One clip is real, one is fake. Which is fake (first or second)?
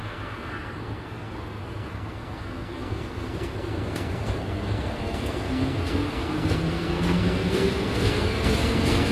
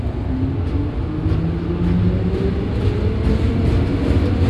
first